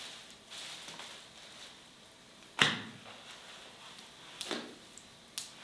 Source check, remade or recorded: recorded